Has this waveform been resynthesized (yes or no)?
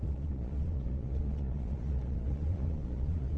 yes